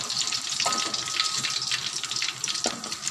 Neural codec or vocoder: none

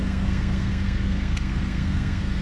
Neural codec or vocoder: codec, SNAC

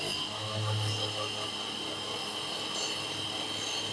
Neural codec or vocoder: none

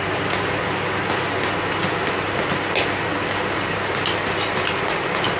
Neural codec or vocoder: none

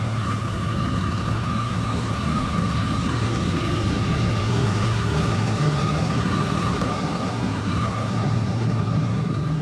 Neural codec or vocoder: codec, SNAC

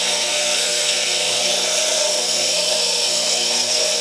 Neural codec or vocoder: codec, SNAC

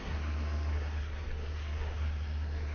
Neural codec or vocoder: codec, SNAC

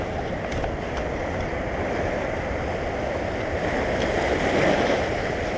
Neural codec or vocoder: none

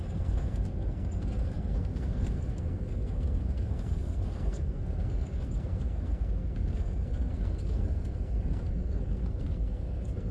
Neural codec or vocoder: codec, SNAC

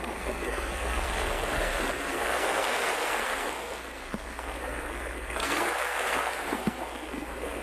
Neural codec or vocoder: codec, SNAC